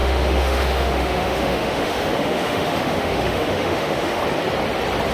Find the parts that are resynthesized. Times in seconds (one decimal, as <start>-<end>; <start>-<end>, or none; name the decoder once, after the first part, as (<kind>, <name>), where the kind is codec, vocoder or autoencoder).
0.0-4.2 (autoencoder, DAC-VAE)